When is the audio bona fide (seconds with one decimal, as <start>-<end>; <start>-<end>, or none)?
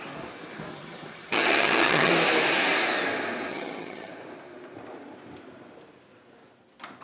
0.0-0.7; 2.1-3.5; 4.1-7.0